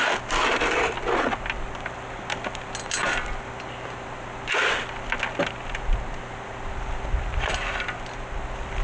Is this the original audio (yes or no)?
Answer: yes